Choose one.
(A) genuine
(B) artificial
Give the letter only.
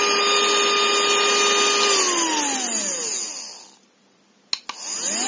A